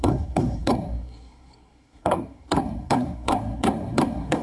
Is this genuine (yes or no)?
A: no